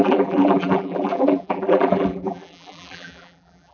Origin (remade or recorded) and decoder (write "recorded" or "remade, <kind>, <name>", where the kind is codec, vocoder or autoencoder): remade, vocoder, BigVGAN v2